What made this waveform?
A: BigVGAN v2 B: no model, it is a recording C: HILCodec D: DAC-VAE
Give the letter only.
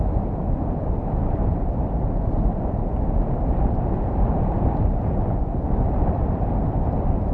A